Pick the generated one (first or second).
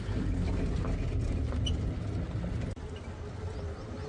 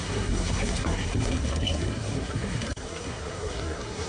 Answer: second